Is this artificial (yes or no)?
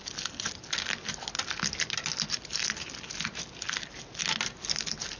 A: no